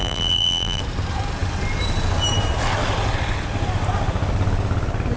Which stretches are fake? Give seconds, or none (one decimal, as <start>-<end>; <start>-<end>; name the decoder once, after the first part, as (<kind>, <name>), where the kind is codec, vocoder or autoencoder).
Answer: 0.0-0.8 (vocoder, BigVGAN v2)